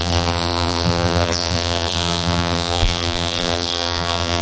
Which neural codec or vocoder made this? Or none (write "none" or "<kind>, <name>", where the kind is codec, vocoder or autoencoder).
vocoder, BigVGAN v2